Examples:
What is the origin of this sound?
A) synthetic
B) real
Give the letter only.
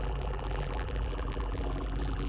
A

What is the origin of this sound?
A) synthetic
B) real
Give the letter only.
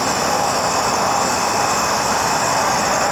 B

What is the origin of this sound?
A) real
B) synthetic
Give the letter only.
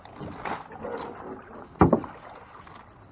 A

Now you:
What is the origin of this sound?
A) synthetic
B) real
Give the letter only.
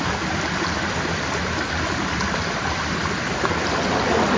B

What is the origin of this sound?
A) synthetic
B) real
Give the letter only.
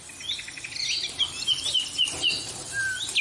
A